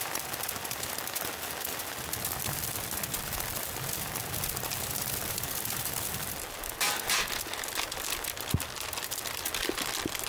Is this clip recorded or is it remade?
recorded